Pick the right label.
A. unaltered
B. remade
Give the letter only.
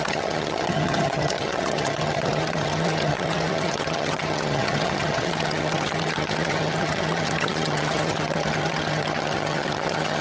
B